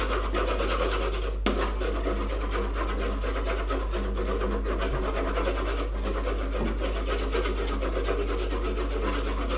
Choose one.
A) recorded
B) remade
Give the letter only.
A